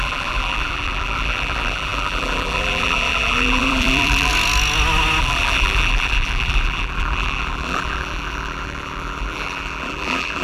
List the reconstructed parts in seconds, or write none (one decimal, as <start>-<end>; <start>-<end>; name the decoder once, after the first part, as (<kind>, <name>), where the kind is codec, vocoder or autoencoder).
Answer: 0.0-4.3 (vocoder, BigVGAN v2); 5.2-10.4